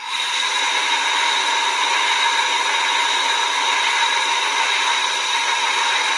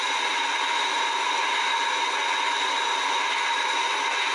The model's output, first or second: first